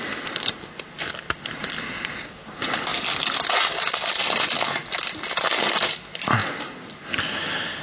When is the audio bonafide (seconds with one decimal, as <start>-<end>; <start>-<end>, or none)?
0.0-7.8